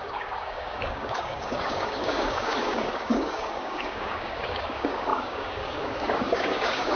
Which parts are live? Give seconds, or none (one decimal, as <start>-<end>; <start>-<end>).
none